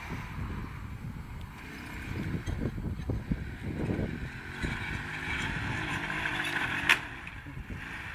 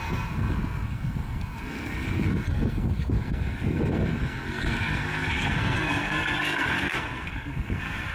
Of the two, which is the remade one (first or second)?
second